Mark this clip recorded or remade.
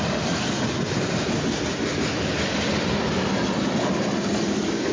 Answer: recorded